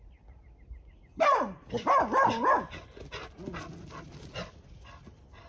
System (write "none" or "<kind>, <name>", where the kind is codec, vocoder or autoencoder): none